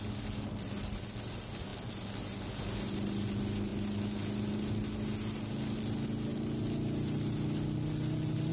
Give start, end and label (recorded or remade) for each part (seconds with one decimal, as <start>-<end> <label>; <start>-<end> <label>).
0.0-8.5 recorded